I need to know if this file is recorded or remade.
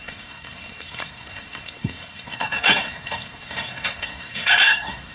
remade